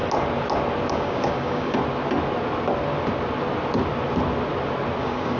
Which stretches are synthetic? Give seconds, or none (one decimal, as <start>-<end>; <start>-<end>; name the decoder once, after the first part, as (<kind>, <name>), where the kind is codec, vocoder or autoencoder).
0.9-1.8 (codec, DAC); 5.0-5.4